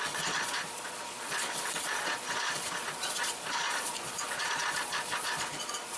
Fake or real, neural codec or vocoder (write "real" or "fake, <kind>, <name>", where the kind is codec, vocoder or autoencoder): fake, vocoder, Vocos